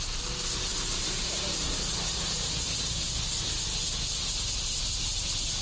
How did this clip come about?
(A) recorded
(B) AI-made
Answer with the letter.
A